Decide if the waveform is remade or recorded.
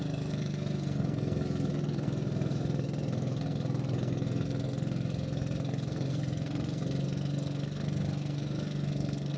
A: remade